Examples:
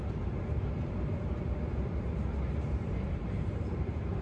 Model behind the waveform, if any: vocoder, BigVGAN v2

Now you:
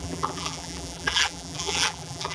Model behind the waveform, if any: vocoder, BigVGAN v2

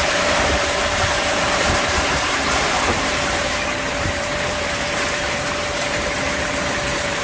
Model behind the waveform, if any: vocoder, BigVGAN v2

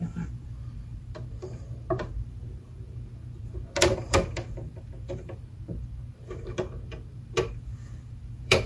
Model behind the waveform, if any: vocoder, BigVGAN v2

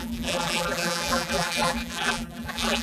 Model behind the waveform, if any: vocoder, BigVGAN v2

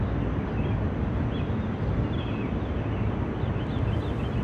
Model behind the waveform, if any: none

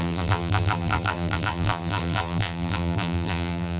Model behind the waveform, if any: vocoder, BigVGAN v2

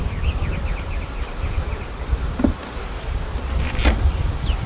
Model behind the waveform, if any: vocoder, BigVGAN v2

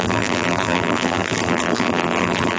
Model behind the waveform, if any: vocoder, BigVGAN v2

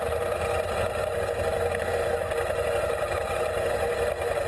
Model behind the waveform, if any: none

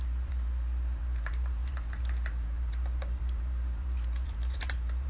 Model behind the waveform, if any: vocoder, BigVGAN v2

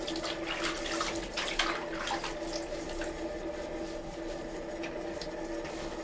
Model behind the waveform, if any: none